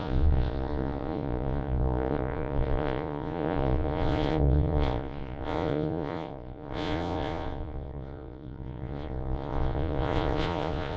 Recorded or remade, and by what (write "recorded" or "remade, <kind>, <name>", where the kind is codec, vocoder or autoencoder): remade, vocoder, Vocos